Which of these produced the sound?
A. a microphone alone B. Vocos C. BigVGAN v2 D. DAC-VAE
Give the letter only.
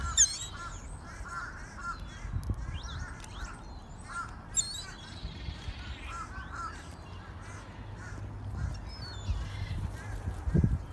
A